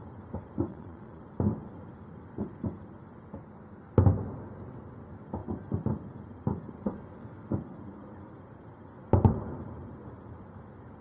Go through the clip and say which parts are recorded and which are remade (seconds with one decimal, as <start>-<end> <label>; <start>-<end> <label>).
0.0-0.7 recorded; 0.7-1.2 remade; 1.2-11.0 recorded